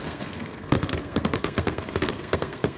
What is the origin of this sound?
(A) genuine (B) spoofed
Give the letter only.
B